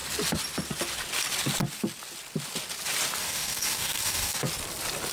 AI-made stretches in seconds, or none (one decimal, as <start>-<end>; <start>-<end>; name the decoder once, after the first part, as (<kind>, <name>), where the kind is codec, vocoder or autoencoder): 3.2-4.4 (codec, DAC)